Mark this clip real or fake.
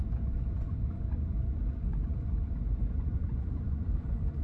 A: fake